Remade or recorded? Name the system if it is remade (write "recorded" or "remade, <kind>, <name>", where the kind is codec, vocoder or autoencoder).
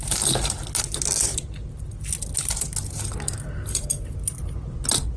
recorded